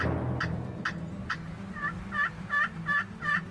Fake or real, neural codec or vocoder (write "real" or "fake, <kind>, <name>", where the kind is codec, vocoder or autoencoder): real